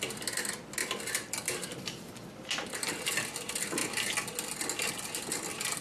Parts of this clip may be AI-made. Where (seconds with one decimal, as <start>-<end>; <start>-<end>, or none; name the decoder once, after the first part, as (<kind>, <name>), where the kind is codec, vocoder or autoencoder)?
0.8-2.7 (vocoder, BigVGAN v2)